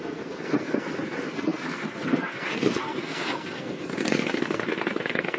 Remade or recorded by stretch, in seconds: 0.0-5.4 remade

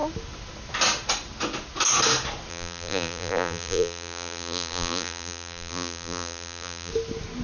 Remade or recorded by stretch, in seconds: 0.0-2.5 recorded; 2.5-6.9 remade; 6.9-7.4 recorded

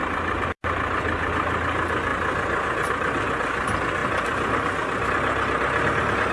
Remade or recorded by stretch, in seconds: 0.0-1.3 remade; 1.3-2.1 recorded; 2.1-2.9 remade; 2.9-4.0 recorded; 4.0-5.1 remade; 5.1-6.3 recorded